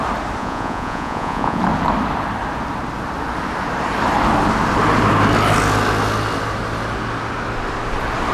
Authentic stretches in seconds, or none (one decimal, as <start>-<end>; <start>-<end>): 0.0-0.4; 1.6-8.3